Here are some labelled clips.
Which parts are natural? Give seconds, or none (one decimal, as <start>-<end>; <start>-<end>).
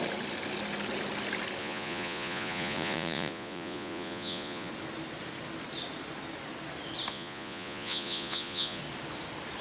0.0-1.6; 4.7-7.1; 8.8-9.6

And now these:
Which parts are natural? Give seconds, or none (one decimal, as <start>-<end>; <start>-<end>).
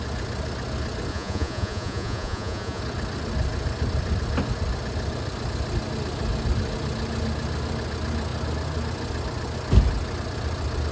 0.0-1.1; 2.8-10.9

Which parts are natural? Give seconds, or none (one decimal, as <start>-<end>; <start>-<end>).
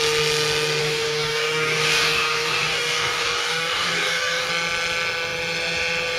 0.0-0.8; 4.5-6.2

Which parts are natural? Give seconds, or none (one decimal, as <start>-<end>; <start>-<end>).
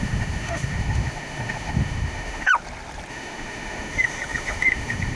2.5-3.1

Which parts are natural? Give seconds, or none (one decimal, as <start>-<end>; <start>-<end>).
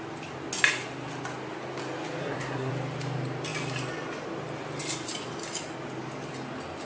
0.0-2.2; 2.7-6.8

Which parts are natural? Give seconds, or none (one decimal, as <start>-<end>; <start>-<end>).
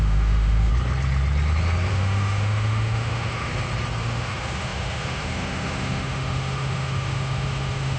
0.7-1.9; 3.5-4.0